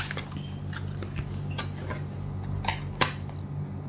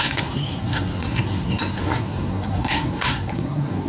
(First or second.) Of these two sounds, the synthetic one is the second